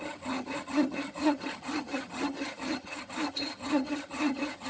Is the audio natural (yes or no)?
no